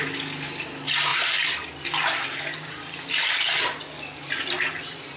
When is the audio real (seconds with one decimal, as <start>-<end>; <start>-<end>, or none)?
0.0-5.2